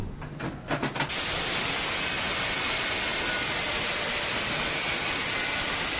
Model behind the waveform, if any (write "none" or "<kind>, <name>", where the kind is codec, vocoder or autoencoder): none